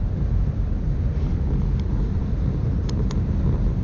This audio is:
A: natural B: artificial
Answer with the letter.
A